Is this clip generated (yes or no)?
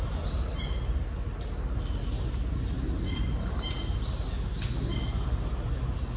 no